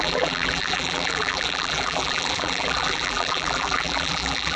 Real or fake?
fake